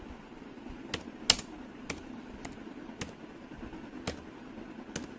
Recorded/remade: recorded